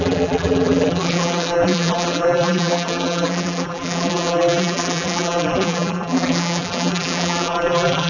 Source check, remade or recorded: remade